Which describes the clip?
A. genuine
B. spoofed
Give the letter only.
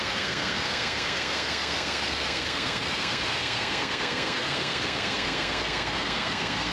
B